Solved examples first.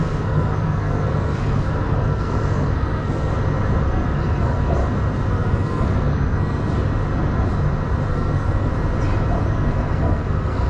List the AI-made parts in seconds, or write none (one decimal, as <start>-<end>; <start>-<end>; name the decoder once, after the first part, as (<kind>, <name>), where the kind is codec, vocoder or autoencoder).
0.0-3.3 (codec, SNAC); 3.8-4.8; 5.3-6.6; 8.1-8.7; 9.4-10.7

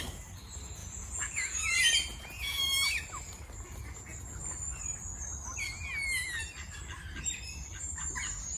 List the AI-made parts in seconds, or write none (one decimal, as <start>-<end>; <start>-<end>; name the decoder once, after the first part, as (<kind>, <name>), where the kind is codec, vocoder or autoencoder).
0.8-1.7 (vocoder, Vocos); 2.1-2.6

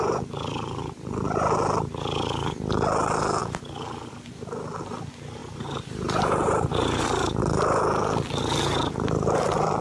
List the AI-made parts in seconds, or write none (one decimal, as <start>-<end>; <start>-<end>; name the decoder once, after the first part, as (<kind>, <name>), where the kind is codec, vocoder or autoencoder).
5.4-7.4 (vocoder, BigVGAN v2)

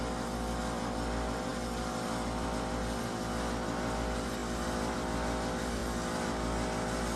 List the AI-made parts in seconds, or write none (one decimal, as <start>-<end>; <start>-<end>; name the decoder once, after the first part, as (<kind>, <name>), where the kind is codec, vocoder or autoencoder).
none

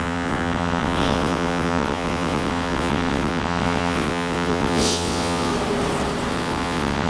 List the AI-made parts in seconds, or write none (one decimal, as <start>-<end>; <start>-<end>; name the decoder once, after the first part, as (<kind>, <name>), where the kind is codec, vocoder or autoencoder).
0.0-5.5 (vocoder, WaveNeXt); 6.3-7.1

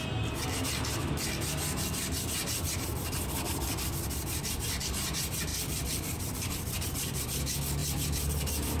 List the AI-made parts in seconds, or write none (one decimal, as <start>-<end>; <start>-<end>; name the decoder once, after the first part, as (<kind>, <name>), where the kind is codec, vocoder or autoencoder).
5.5-6.7 (vocoder, BigVGAN v2); 7.8-8.8

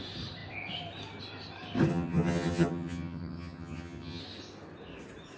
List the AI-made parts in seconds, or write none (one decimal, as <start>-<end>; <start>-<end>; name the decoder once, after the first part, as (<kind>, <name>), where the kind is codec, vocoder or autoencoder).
1.9-4.2 (vocoder, HiFi-GAN)